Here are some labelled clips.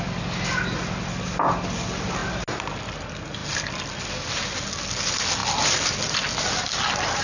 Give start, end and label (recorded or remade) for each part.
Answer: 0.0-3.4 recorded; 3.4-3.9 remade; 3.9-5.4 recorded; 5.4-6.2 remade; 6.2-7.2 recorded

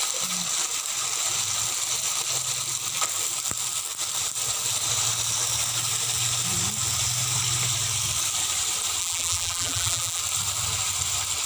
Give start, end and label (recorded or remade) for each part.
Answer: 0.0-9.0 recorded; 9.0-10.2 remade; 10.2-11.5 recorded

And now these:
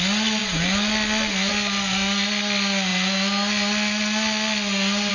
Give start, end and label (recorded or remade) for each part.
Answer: 0.0-5.1 recorded

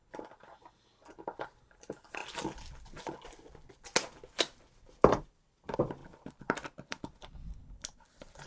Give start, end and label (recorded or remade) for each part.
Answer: 0.0-2.2 remade; 2.2-4.8 recorded; 4.8-6.0 remade; 6.0-6.9 recorded; 6.9-8.5 remade

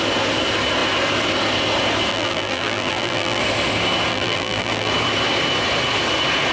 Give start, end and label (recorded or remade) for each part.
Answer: 0.0-2.1 recorded; 2.1-3.4 remade; 3.4-4.1 recorded; 4.1-4.9 remade; 4.9-6.5 recorded